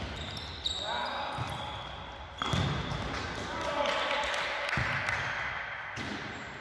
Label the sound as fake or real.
real